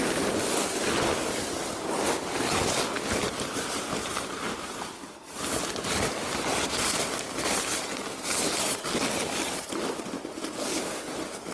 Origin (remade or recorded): recorded